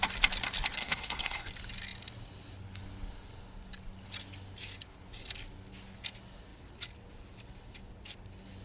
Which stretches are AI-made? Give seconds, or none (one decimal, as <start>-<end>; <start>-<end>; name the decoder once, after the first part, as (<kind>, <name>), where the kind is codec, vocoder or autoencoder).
0.8-1.5 (codec, SNAC)